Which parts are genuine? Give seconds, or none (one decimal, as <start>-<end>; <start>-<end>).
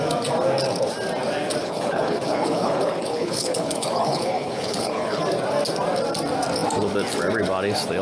0.0-1.6; 5.2-8.0